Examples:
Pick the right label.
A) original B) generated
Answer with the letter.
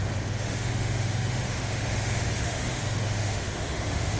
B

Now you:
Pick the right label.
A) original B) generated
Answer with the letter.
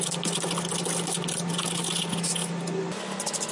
A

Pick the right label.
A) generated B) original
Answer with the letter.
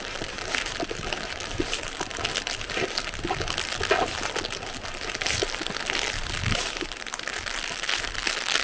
B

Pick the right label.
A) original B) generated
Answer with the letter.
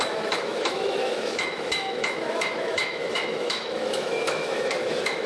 B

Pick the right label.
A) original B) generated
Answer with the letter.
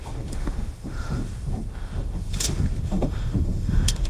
B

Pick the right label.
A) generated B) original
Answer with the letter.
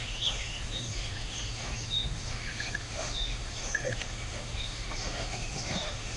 A